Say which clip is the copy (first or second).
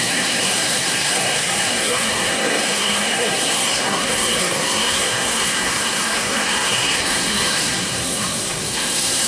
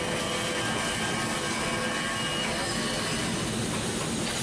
first